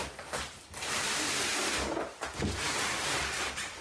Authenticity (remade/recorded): recorded